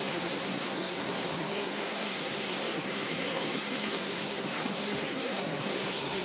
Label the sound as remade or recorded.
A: remade